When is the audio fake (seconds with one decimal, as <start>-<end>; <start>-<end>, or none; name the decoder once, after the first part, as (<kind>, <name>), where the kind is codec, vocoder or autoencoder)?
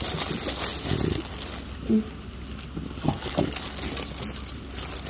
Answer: none